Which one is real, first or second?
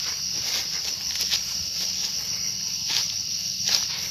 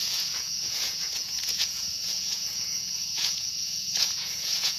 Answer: first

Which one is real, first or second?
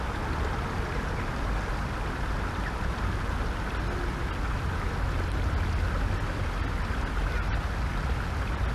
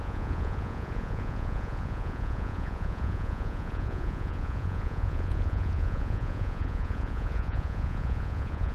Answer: first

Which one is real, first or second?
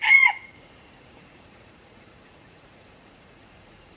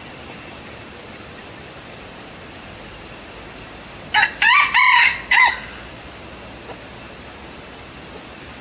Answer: second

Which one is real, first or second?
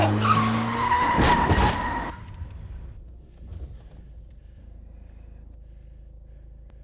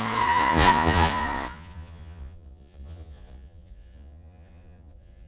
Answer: first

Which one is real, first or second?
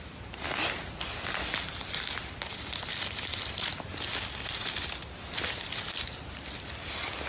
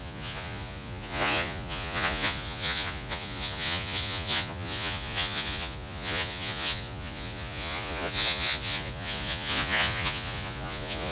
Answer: first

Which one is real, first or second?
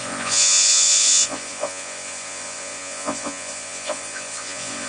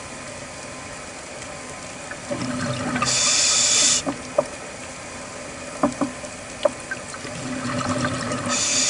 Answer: second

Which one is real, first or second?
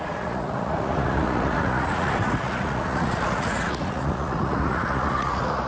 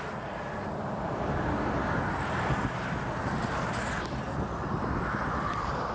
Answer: second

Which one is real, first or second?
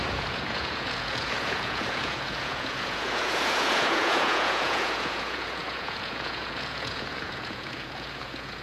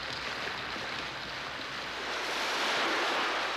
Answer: second